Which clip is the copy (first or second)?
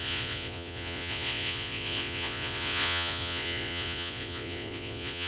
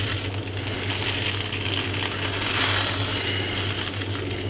first